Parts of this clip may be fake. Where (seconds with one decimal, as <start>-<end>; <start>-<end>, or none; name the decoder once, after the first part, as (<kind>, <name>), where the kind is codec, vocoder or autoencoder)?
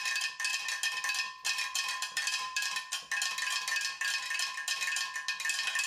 0.0-0.5 (vocoder, BigVGAN v2); 1.9-2.6